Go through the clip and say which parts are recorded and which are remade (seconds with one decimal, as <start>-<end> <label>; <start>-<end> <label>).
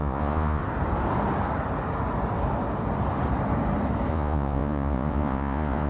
0.0-0.6 remade; 0.6-4.1 recorded; 4.1-5.9 remade